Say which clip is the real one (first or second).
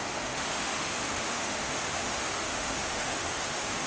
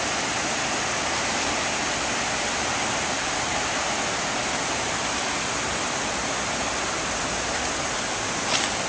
second